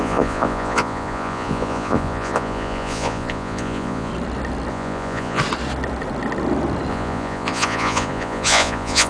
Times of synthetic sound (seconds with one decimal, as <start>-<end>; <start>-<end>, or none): 0.0-4.1; 4.7-5.4; 6.9-9.1